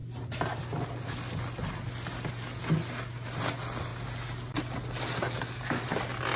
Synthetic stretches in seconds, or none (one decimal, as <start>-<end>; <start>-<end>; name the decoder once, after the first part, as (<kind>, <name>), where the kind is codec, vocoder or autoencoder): none